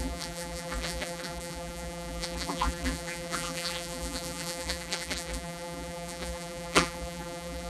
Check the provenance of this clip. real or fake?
fake